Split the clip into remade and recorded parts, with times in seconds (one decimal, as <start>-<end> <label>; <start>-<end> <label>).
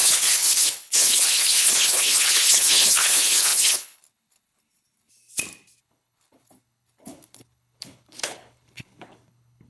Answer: 0.0-5.1 remade; 5.1-5.8 recorded; 5.8-9.7 remade